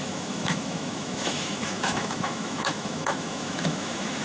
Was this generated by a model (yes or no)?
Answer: yes